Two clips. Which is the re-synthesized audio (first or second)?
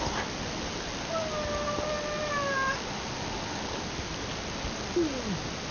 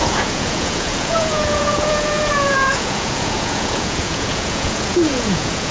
second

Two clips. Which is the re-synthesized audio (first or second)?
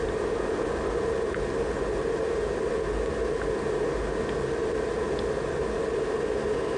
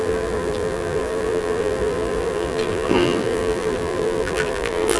second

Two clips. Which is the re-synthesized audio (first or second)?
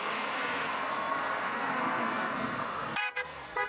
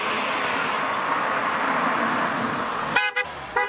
first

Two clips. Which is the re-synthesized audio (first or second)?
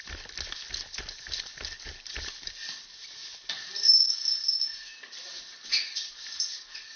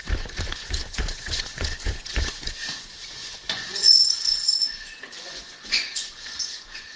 second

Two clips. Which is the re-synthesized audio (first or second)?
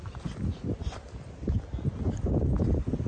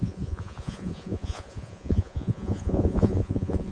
second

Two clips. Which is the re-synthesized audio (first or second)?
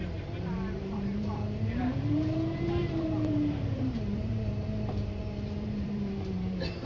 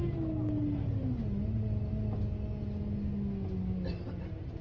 first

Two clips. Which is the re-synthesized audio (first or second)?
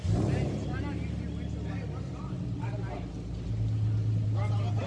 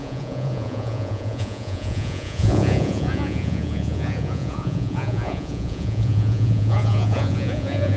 second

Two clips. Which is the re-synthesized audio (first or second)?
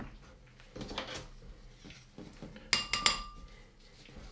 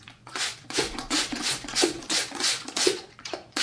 second